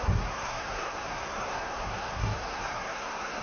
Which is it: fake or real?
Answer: fake